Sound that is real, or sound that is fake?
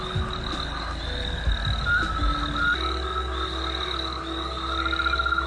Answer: real